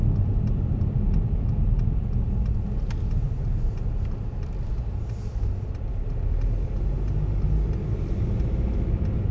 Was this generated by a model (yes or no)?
no